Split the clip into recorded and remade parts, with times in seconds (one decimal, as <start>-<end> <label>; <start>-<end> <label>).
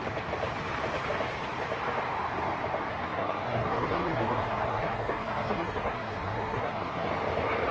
0.0-2.9 recorded; 2.9-7.1 remade; 7.1-7.7 recorded